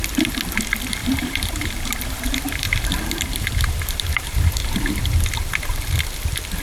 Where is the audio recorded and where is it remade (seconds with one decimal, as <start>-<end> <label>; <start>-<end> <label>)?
0.0-1.0 recorded; 1.0-5.0 remade; 5.0-6.6 recorded